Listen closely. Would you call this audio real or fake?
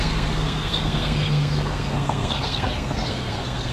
fake